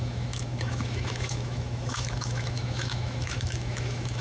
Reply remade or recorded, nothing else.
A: remade